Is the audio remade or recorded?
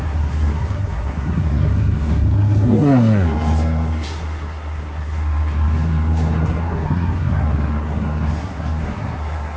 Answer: remade